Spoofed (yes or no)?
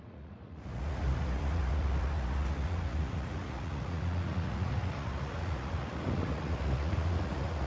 yes